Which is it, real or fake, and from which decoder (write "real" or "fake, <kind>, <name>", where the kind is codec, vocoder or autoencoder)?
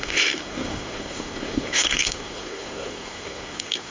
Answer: fake, codec, SNAC